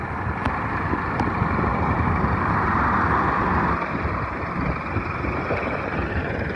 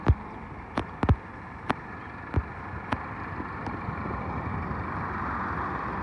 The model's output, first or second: first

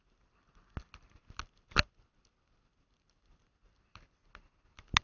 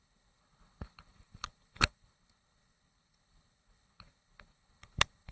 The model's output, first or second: second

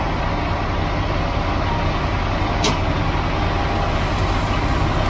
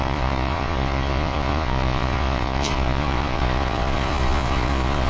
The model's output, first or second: second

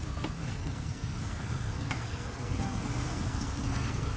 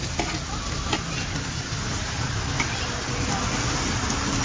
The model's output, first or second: first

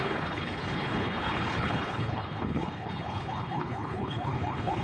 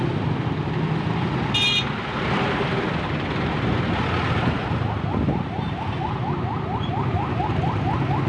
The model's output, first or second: first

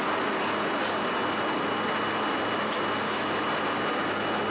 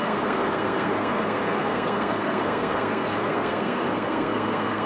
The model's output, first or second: second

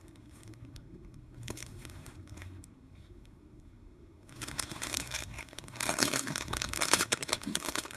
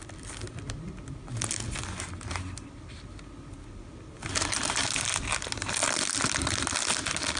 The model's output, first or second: first